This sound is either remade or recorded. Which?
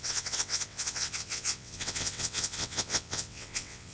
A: remade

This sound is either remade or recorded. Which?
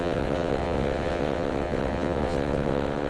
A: remade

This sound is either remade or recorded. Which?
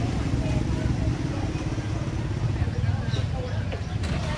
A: recorded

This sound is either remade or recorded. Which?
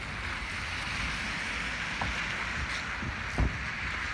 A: recorded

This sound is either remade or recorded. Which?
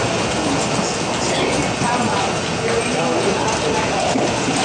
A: recorded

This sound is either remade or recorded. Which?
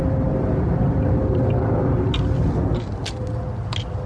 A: recorded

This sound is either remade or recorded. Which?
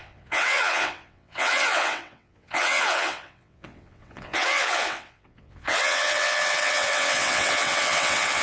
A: remade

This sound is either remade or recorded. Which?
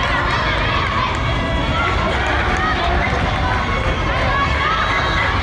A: recorded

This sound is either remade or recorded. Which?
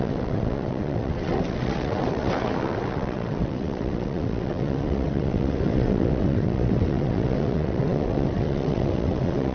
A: remade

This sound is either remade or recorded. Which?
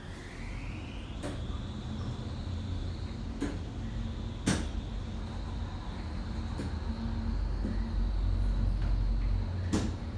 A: recorded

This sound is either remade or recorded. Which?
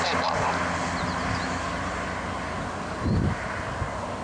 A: recorded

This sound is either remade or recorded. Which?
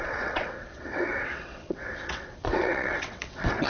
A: remade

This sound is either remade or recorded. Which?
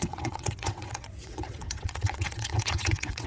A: remade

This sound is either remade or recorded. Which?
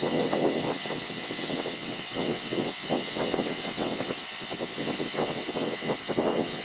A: remade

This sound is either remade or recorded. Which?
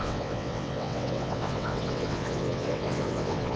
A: remade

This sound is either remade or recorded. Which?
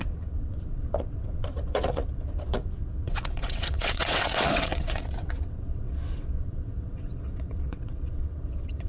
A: remade